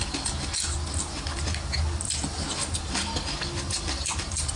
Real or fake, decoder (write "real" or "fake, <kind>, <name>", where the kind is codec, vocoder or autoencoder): real